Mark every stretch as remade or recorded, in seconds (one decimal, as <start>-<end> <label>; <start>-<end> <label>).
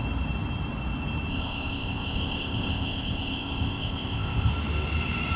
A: 0.0-1.3 recorded; 1.3-4.5 remade; 4.5-5.4 recorded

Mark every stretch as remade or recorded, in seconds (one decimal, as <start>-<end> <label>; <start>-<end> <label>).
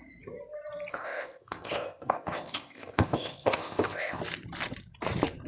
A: 0.0-0.9 recorded; 0.9-4.2 remade; 4.2-5.5 recorded